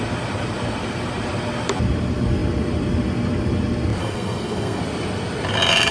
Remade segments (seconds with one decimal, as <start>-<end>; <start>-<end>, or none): 4.0-4.8